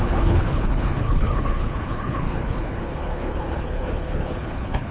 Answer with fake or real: fake